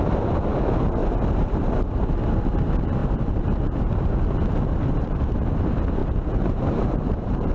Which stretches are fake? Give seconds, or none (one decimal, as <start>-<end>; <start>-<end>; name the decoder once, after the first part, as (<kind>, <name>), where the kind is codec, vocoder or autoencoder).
1.0-1.6 (vocoder, BigVGAN v2); 3.0-5.2; 6.0-7.5